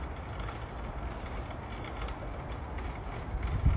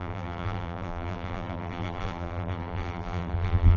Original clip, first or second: first